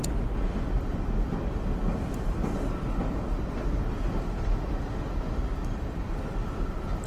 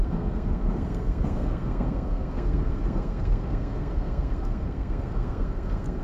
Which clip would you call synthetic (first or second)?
second